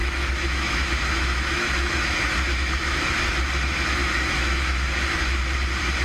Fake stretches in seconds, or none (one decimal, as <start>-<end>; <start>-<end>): 0.0-3.1; 4.0-4.9